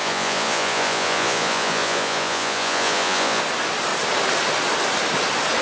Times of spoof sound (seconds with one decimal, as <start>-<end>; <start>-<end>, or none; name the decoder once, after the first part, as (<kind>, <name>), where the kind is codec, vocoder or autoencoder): 0.0-3.4 (vocoder, Vocos)